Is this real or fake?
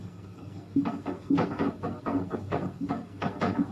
fake